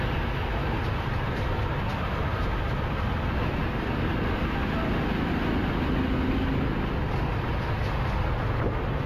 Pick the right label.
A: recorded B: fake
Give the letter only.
A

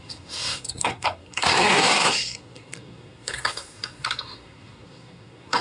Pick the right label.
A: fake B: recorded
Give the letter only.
A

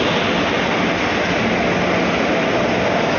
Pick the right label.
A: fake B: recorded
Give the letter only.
B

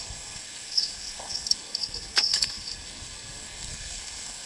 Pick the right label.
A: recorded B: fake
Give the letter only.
B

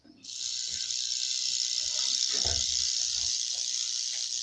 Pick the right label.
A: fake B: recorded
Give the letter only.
B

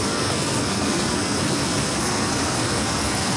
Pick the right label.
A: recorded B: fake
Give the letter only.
B